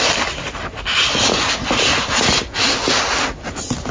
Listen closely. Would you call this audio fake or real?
real